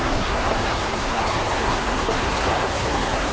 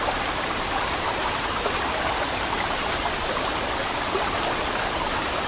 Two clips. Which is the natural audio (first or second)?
second